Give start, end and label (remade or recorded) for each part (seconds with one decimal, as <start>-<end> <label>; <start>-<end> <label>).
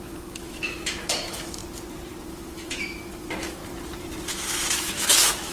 0.0-1.6 remade; 1.6-2.3 recorded; 2.3-3.6 remade; 3.6-4.3 recorded; 4.3-5.5 remade